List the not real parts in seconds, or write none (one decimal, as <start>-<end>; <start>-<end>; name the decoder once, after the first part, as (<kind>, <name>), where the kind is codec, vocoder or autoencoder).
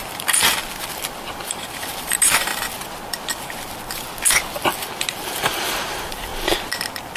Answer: 0.0-0.4 (vocoder, BigVGAN v2); 0.9-2.5; 5.1-6.3